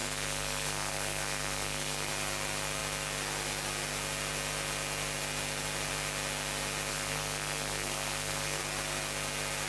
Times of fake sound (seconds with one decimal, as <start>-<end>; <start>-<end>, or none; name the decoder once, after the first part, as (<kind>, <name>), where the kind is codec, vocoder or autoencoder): 0.0-2.1 (codec, SNAC); 6.9-8.6